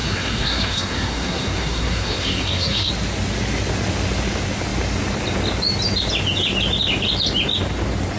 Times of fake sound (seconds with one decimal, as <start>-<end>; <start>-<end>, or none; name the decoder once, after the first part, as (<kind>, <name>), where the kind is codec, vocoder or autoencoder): 0.0-2.9 (codec, SNAC)